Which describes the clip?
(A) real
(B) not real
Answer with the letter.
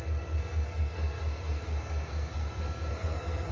B